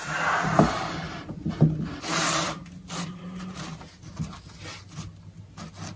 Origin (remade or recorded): recorded